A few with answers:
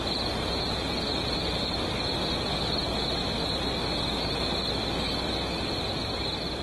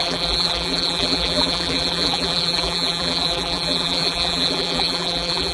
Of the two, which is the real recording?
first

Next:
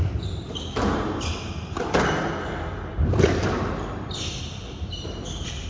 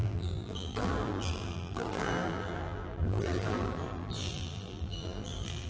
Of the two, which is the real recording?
first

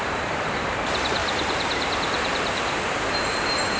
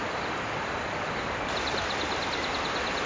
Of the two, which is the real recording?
second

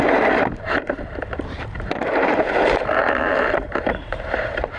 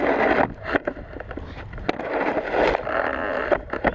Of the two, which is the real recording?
second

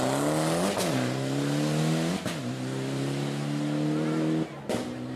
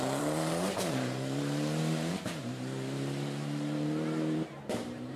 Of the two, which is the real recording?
first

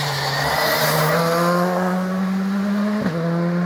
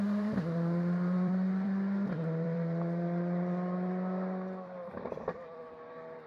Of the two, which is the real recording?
first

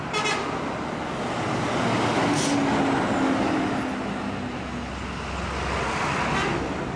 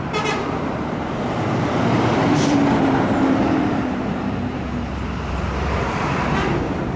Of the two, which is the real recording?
first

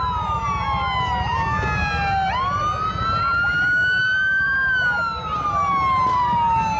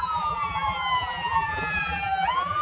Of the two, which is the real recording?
first